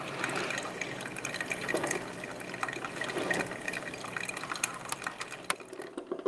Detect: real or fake real